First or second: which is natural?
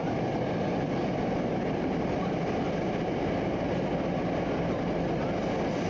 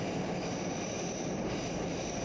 second